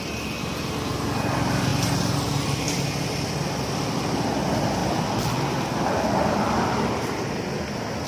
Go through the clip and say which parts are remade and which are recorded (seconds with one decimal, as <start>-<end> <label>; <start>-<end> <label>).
0.0-8.1 recorded